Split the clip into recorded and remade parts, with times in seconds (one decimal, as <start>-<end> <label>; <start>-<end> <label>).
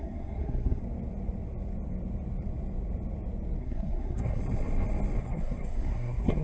0.0-0.8 remade; 0.8-3.6 recorded; 3.6-4.4 remade; 4.4-5.2 recorded; 5.2-6.4 remade